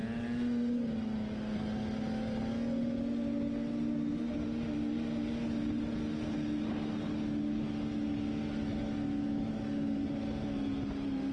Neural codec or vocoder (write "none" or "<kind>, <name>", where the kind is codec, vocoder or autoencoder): none